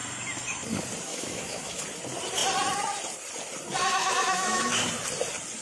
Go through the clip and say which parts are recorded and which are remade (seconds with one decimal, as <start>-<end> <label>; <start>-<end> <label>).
0.0-1.1 recorded; 1.1-1.8 remade; 1.8-3.8 recorded; 3.8-4.9 remade; 4.9-5.6 recorded